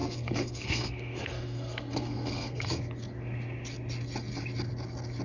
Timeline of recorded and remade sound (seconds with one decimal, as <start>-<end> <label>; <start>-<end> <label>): 0.0-2.8 remade; 2.8-5.2 recorded